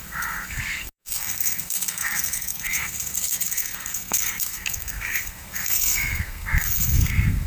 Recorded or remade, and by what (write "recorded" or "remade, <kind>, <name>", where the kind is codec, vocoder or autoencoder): remade, codec, SNAC